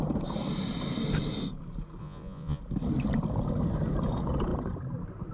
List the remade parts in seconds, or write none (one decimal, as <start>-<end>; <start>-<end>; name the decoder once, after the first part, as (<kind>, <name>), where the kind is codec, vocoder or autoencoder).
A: 2.0-2.6 (vocoder, Vocos)